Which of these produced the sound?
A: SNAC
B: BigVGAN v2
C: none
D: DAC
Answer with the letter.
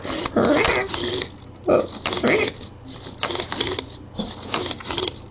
C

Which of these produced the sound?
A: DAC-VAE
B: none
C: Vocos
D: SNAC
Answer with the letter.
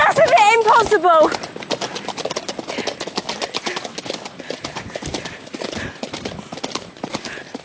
B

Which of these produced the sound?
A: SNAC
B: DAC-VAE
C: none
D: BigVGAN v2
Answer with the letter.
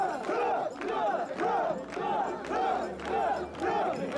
C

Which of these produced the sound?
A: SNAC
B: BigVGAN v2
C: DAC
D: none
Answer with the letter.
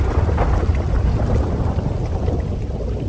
D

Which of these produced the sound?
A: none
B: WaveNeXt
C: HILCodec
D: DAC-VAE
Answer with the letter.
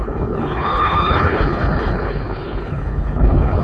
C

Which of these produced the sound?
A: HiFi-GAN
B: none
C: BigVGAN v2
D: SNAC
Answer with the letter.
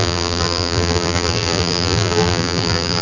C